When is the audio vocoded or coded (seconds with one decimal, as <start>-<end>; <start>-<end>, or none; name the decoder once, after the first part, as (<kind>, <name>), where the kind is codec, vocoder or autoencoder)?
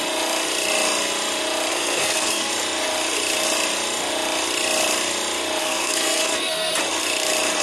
1.7-2.5 (codec, SNAC); 5.6-6.7